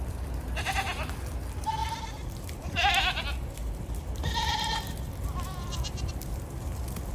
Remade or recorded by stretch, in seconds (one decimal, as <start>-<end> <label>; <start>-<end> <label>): 0.0-1.8 recorded; 1.8-3.2 remade; 3.2-3.6 recorded; 3.6-4.2 remade; 4.2-5.1 recorded; 5.1-6.1 remade; 6.1-7.1 recorded